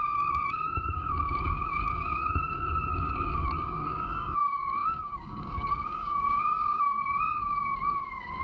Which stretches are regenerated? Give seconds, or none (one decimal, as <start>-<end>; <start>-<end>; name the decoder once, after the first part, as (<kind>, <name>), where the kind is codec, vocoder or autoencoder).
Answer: 0.0-8.4 (codec, DAC)